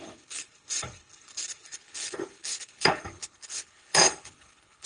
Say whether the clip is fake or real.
fake